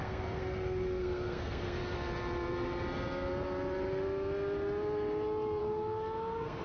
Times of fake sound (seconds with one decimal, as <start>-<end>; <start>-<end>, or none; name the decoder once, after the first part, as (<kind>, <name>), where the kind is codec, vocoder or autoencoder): 0.0-1.8 (codec, SNAC); 5.6-6.6